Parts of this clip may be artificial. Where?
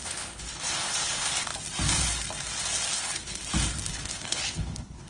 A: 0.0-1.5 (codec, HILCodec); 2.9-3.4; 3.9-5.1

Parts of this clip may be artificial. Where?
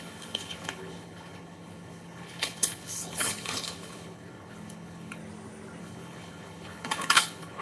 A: 0.0-5.2 (codec, HILCodec); 5.8-7.6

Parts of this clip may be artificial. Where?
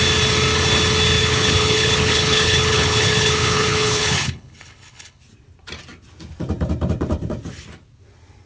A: 1.2-5.2 (codec, HILCodec)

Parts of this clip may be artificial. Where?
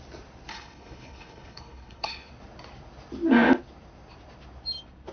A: 0.5-2.3 (codec, HILCodec)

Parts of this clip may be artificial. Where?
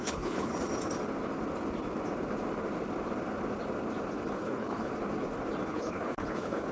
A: 0.0-0.5 (codec, HILCodec); 4.3-4.9; 5.7-6.7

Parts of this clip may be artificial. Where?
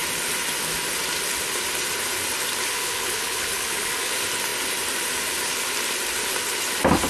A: 2.7-4.1 (codec, HILCodec)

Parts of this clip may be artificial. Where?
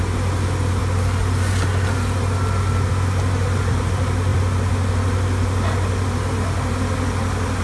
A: none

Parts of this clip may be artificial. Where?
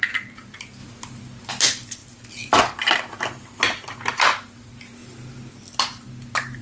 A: none